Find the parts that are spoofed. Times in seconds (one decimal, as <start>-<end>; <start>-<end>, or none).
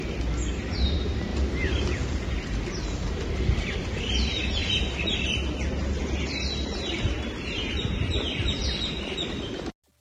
none